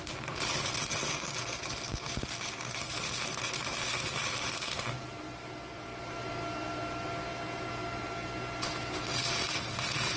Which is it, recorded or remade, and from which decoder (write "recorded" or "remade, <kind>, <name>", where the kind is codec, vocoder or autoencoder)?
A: recorded